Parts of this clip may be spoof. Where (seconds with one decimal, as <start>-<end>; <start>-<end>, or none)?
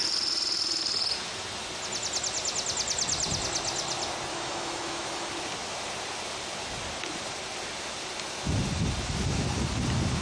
4.3-5.3